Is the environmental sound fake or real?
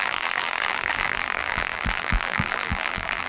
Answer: fake